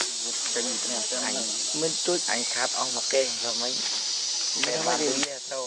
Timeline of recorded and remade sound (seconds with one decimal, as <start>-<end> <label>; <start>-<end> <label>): 0.0-2.9 recorded; 2.9-3.5 remade; 3.5-5.7 recorded